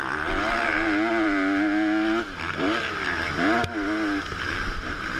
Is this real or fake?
real